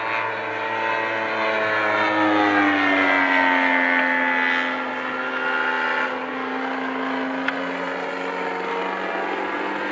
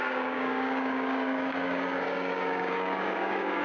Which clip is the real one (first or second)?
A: first